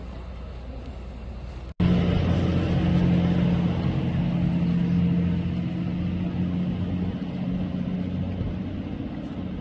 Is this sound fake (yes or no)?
no